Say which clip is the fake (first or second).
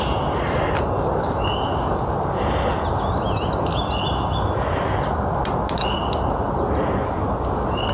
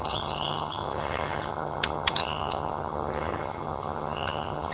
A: second